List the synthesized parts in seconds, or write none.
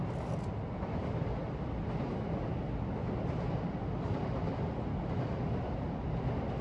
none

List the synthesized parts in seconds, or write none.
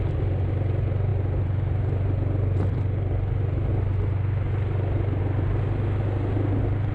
none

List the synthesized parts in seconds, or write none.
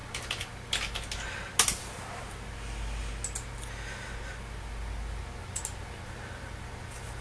none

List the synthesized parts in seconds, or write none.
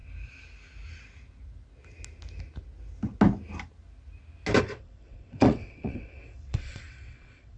4.6-7.6 (vocoder, WaveNeXt)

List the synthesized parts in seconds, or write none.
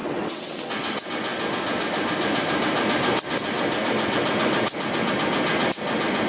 0.0-0.7 (vocoder, WaveNeXt)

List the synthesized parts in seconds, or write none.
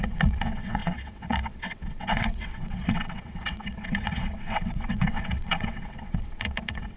0.0-7.0 (vocoder, WaveNeXt)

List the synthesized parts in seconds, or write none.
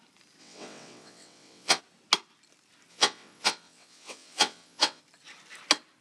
0.4-1.8 (vocoder, WaveNeXt); 2.9-5.0